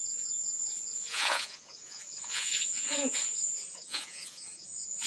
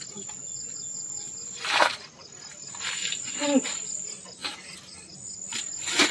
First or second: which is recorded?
second